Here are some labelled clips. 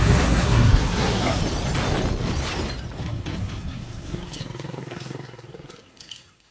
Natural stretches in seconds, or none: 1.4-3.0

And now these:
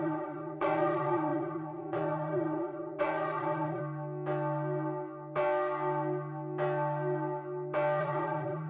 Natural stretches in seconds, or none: 3.8-8.0

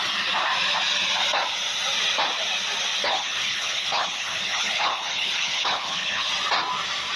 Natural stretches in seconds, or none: 0.0-3.0; 6.3-7.2